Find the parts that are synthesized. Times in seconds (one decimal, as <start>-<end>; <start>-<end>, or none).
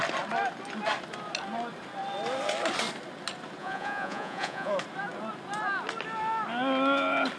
3.6-4.7